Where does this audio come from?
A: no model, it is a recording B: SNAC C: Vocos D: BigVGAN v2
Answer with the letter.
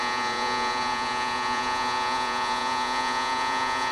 C